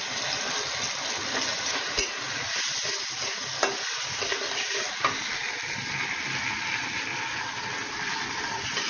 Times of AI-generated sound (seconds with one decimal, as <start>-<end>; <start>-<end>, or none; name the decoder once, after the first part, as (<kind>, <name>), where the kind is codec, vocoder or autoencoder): 1.5-2.2 (vocoder, Vocos)